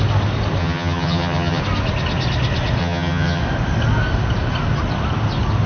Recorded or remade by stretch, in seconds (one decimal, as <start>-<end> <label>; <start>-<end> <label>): 0.0-0.6 recorded; 0.6-1.6 remade; 1.6-2.8 recorded; 2.8-3.4 remade; 3.4-5.7 recorded

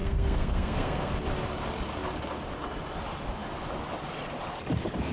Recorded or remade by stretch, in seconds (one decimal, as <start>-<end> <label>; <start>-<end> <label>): 0.0-1.1 remade; 1.1-5.1 recorded

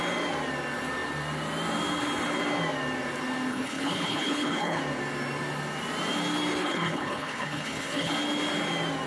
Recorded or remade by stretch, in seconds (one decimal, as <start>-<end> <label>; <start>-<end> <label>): 0.0-3.5 recorded; 3.5-4.8 remade; 4.8-6.6 recorded; 6.6-8.1 remade; 8.1-9.1 recorded

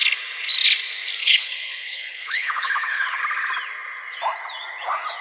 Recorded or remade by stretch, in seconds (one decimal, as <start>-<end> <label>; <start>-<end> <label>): 0.0-1.2 recorded; 1.2-3.2 remade; 3.2-5.2 recorded

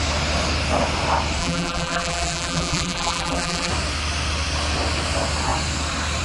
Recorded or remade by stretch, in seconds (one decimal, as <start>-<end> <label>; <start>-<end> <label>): 0.0-1.4 recorded; 1.4-3.7 remade; 3.7-6.2 recorded

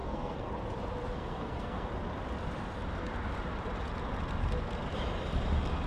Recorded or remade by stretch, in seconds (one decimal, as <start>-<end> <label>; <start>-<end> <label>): 0.0-0.5 remade; 0.5-1.1 recorded; 1.1-1.9 remade; 1.9-5.9 recorded